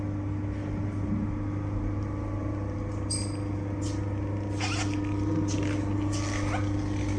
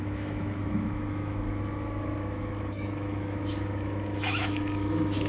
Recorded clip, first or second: first